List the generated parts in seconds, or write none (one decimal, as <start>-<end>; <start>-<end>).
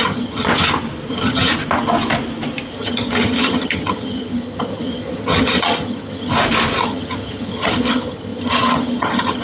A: 0.0-0.5; 1.1-1.5; 2.7-6.3; 6.8-9.4